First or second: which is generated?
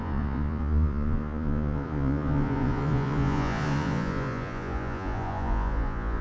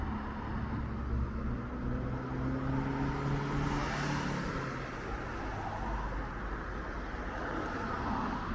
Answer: first